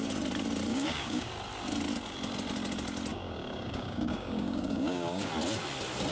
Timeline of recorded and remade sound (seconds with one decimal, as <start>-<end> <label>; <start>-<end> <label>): 0.0-0.7 recorded; 0.7-1.3 remade; 1.3-3.1 recorded; 3.1-5.3 remade; 5.3-6.1 recorded